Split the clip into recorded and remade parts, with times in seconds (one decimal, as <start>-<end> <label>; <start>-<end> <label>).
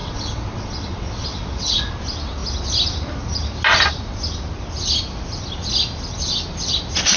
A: 0.0-1.9 remade; 1.9-7.2 recorded